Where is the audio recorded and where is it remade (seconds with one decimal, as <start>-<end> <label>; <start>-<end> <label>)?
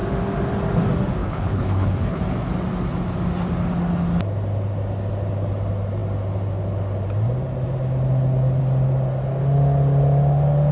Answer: 0.0-1.2 recorded; 1.2-2.2 remade; 2.2-10.7 recorded